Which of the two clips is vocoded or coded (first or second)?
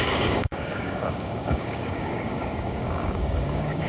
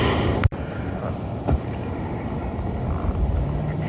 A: first